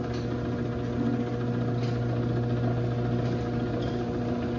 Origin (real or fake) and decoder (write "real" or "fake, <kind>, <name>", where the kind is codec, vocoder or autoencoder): real